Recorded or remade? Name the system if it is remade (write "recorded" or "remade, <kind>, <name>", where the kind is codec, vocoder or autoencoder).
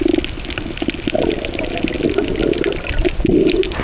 recorded